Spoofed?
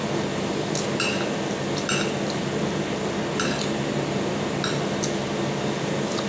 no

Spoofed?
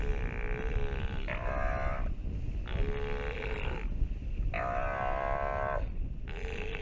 no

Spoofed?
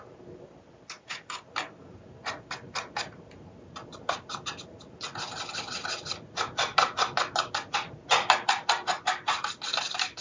no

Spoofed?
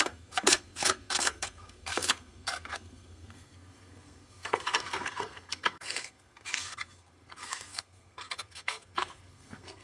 yes